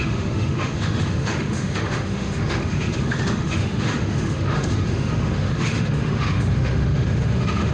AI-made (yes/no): yes